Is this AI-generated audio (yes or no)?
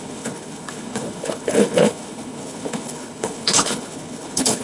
yes